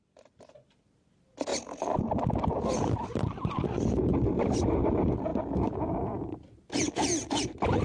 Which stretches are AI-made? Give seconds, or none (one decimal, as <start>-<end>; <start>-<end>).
none